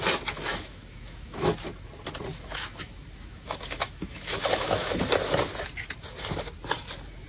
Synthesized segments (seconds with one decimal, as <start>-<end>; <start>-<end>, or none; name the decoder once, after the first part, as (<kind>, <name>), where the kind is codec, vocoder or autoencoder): 0.5-1.5 (autoencoder, DAC-VAE); 2.3-5.0